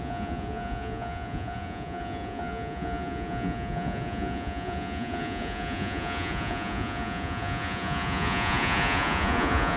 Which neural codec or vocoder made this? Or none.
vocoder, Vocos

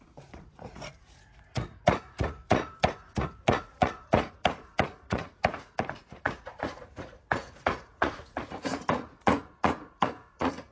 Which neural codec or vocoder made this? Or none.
vocoder, Vocos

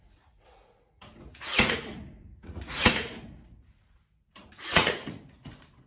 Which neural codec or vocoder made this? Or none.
vocoder, Vocos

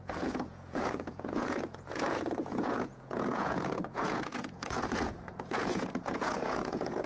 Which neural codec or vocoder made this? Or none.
vocoder, Vocos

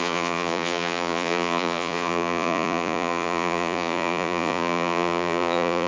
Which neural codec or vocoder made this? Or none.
vocoder, Vocos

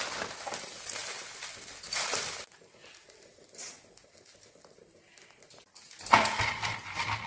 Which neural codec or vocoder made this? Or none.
none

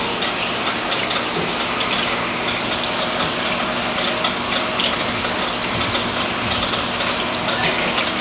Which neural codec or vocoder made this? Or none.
none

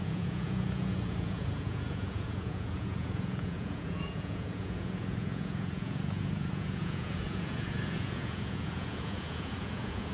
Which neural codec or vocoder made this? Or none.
vocoder, Vocos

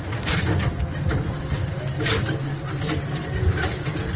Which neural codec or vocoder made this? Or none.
none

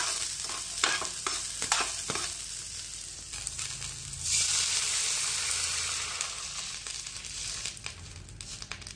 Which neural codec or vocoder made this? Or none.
none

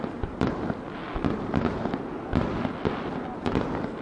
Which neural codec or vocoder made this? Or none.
none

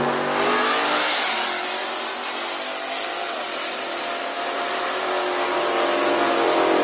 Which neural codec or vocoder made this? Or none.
none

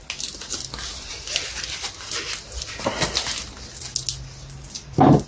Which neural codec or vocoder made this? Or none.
none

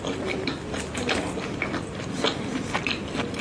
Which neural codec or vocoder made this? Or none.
none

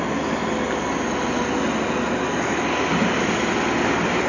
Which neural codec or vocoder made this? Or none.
none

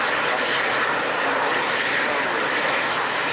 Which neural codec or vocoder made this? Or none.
none